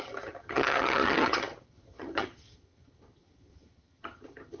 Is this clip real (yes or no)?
no